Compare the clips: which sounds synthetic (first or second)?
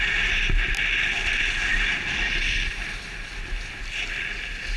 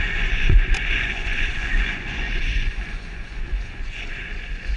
second